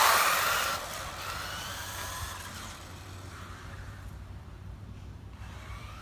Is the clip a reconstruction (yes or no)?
yes